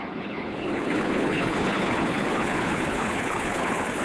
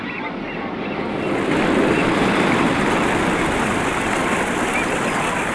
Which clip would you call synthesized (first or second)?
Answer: first